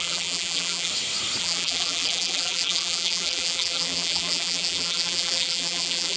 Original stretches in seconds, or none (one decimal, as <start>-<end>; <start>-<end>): 0.9-1.4